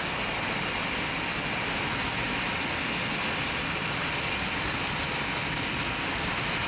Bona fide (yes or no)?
yes